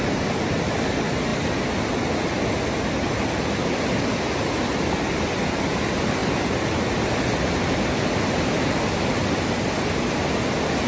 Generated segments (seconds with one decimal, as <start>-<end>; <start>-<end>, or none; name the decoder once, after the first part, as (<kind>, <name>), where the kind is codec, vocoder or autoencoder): none

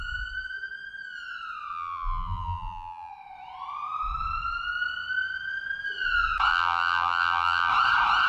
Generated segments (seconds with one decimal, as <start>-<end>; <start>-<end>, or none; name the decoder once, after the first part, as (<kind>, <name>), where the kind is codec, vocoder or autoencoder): 1.7-3.1 (vocoder, BigVGAN v2); 6.5-7.7

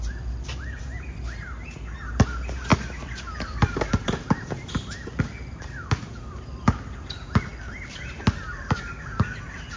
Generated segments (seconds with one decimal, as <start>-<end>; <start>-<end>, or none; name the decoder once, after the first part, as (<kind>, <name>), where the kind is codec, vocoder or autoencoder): none

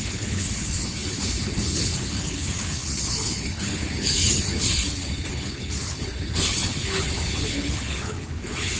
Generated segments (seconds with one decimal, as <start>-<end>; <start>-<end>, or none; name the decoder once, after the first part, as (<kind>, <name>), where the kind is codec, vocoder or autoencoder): 0.0-8.8 (codec, HILCodec)

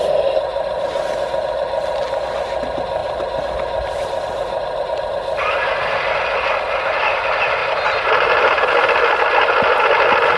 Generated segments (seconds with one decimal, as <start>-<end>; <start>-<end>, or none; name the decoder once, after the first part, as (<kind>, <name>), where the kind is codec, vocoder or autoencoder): 0.5-1.0 (vocoder, BigVGAN v2); 3.0-4.9; 7.6-8.9

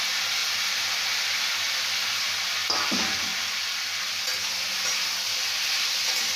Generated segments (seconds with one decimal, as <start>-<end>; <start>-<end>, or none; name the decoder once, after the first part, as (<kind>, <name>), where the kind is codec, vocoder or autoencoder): 0.4-2.2 (vocoder, BigVGAN v2); 3.3-4.1

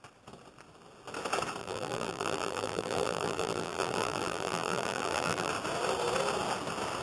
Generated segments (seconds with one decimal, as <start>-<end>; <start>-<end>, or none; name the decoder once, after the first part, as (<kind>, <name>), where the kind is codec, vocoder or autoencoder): 1.6-5.5 (vocoder, BigVGAN v2)

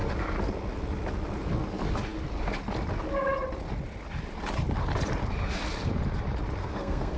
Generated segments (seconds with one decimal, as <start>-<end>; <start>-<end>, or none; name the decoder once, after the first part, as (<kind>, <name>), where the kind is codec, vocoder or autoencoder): 6.6-7.2 (codec, SNAC)